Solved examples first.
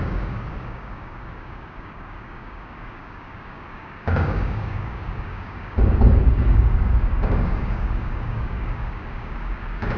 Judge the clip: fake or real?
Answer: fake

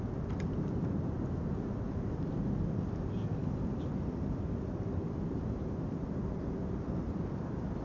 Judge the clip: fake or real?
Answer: real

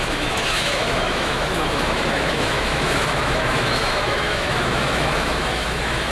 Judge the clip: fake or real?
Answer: fake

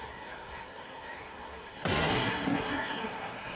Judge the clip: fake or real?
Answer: fake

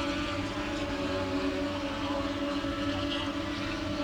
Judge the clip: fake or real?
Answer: real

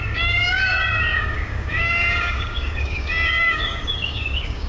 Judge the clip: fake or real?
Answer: fake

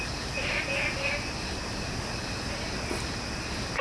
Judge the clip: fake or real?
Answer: real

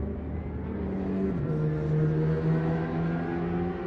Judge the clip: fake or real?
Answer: real